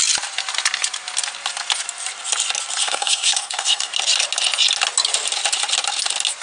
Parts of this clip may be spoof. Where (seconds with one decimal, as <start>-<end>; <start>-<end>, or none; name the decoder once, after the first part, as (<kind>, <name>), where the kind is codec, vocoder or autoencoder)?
2.8-3.9 (codec, SNAC)